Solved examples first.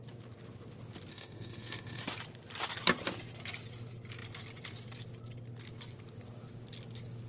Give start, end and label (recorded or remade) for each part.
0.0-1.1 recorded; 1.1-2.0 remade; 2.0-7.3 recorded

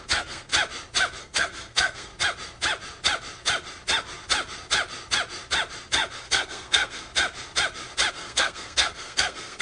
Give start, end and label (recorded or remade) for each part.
0.0-0.5 remade; 0.5-1.2 recorded; 1.2-2.1 remade; 2.1-6.2 recorded; 6.2-7.1 remade; 7.1-8.1 recorded; 8.1-9.6 remade